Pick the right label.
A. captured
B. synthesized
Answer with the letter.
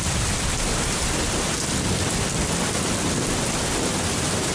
A